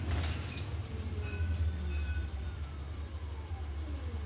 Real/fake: real